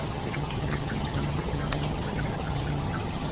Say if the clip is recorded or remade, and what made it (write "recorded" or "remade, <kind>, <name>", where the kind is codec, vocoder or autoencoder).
remade, vocoder, HiFi-GAN